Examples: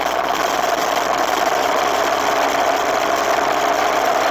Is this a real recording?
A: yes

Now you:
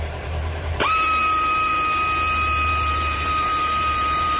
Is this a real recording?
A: no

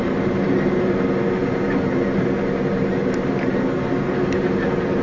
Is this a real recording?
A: yes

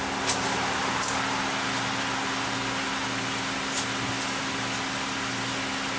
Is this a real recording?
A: yes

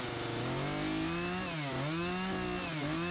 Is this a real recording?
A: yes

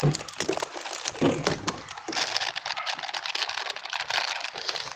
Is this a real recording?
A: yes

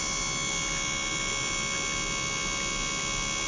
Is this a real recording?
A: yes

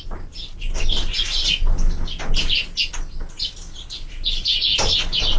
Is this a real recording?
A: yes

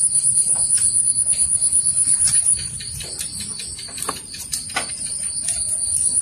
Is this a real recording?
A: no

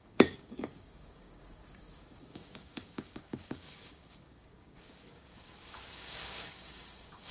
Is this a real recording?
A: no